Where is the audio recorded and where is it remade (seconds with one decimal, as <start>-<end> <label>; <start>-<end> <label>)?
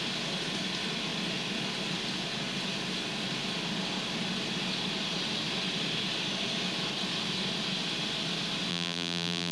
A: 0.0-8.7 recorded; 8.7-9.5 remade